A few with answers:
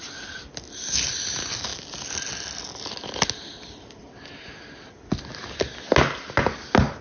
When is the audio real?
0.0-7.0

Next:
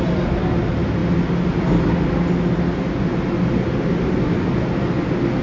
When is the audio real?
0.0-5.4

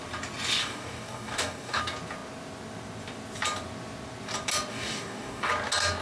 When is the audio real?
0.0-0.6; 1.8-4.7; 5.5-6.0

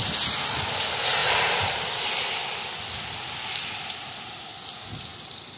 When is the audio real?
0.0-1.2; 1.8-5.6